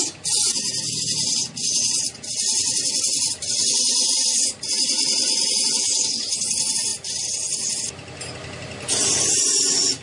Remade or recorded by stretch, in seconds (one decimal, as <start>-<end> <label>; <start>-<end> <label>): 0.0-10.0 recorded

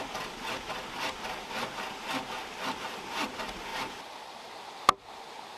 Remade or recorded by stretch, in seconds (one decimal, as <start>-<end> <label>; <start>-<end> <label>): 0.0-3.7 recorded; 3.7-4.5 remade; 4.5-5.6 recorded